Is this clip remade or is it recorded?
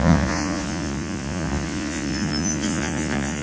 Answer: remade